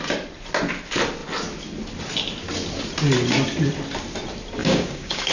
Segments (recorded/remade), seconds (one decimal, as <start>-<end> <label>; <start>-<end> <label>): 0.0-4.6 recorded; 4.6-5.3 remade

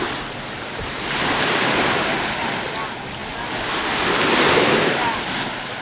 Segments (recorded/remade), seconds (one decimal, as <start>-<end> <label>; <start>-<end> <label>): 0.0-5.8 recorded

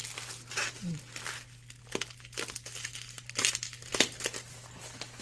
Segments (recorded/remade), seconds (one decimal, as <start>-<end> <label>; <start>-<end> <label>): 0.0-5.2 recorded